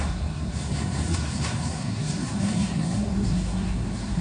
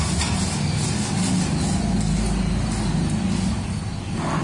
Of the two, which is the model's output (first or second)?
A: first